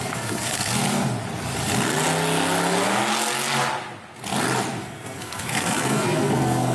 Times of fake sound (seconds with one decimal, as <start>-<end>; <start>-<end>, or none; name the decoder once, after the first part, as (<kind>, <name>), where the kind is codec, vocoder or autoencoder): 0.0-0.8 (codec, SNAC); 4.8-6.7